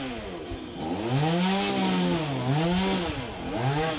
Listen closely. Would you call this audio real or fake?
real